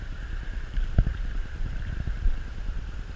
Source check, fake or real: fake